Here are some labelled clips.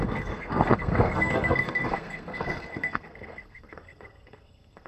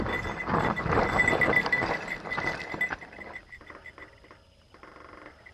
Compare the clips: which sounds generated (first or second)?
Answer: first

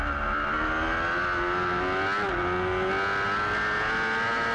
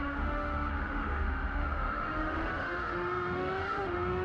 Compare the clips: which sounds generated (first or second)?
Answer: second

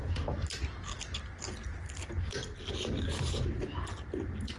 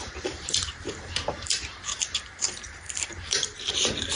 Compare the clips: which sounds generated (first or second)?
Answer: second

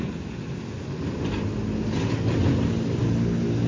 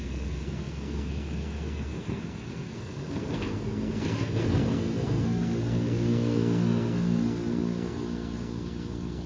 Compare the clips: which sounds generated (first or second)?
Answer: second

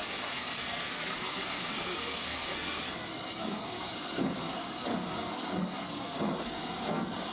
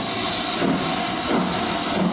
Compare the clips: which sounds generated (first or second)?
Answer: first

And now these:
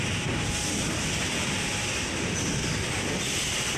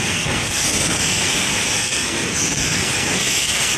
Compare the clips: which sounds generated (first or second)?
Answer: second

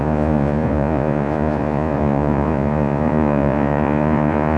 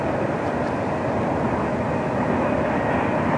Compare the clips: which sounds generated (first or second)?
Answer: first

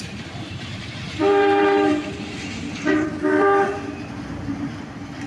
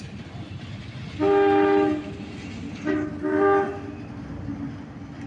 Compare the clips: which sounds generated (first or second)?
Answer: first